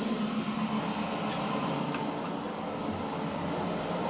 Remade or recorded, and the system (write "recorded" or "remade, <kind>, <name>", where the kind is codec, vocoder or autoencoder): recorded